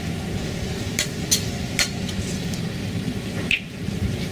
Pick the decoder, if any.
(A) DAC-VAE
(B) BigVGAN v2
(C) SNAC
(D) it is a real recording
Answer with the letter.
D